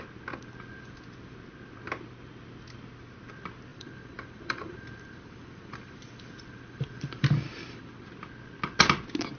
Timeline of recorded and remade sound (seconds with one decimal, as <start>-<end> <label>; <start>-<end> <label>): 0.0-3.7 recorded; 3.7-8.0 remade; 8.0-9.4 recorded